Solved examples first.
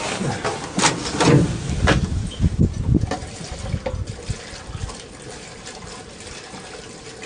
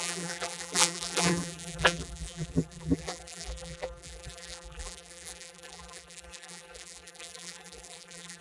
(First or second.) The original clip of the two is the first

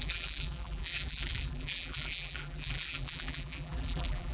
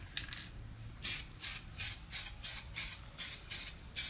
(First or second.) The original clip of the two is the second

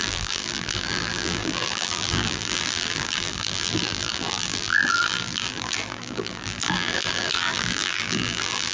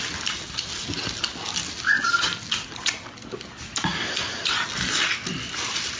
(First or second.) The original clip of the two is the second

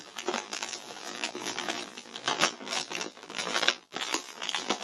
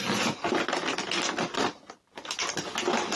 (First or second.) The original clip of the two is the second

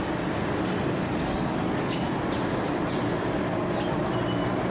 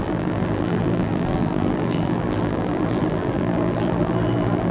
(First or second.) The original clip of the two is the first